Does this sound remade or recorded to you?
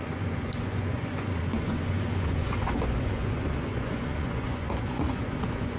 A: remade